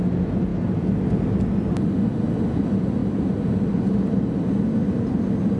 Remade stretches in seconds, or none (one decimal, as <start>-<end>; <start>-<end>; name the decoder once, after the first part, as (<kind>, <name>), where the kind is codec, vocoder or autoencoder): none